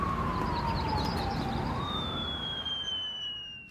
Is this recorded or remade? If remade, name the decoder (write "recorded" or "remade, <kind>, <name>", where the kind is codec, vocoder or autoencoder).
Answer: recorded